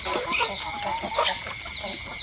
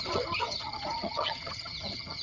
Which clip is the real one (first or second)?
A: first